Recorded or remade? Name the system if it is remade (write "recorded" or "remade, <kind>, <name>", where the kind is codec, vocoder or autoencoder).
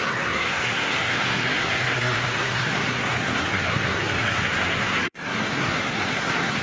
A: remade, codec, SNAC